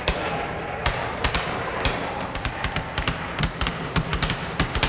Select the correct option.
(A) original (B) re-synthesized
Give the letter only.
B